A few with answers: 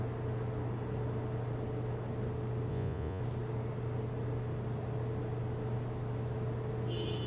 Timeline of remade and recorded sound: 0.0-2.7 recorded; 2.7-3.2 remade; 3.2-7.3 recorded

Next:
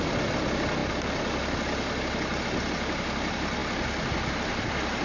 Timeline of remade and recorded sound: 0.0-5.0 recorded

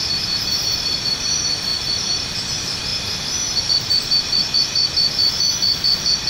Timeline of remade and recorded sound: 0.0-2.9 remade; 2.9-3.6 recorded; 3.6-4.4 remade; 4.4-6.3 recorded

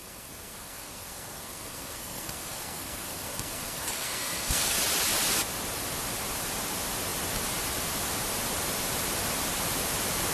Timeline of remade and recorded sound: 0.0-4.8 remade; 4.8-10.3 recorded

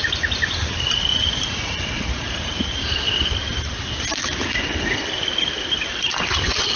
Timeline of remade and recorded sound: 0.0-1.1 recorded; 1.1-2.7 remade; 2.7-6.8 recorded